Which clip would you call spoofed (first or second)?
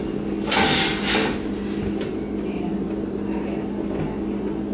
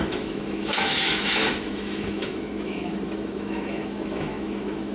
second